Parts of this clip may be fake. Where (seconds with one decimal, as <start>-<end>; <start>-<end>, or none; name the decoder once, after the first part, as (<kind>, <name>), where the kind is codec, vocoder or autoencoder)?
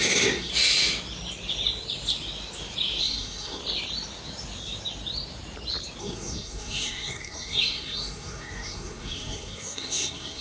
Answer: 0.0-0.5 (codec, SNAC); 3.0-3.6; 6.0-10.4